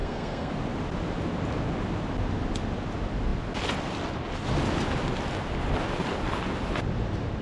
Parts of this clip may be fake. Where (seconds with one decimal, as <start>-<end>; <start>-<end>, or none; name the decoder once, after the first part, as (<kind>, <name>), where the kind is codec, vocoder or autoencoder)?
0.0-0.5 (codec, SNAC)